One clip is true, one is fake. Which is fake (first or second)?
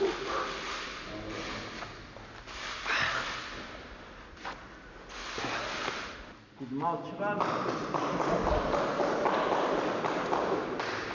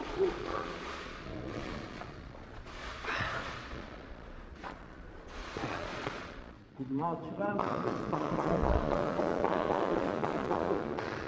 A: second